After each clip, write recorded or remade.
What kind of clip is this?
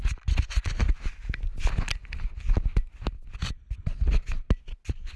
recorded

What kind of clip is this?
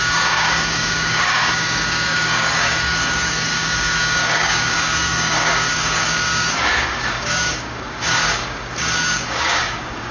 remade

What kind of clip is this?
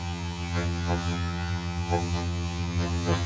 remade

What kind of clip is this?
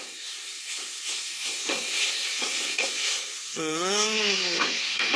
remade